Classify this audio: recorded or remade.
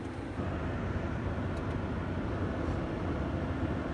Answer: recorded